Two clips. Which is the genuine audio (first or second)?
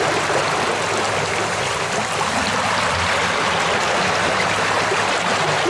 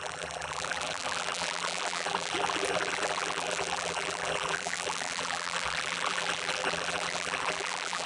first